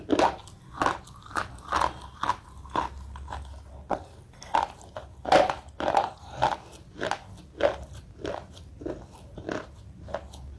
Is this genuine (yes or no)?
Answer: yes